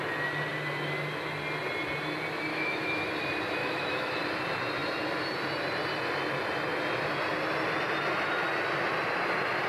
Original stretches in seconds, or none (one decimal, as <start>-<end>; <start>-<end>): 0.0-2.5; 3.1-3.6; 4.2-9.7